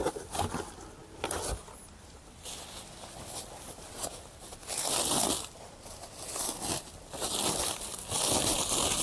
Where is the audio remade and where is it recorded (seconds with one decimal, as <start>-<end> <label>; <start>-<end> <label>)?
0.0-9.0 recorded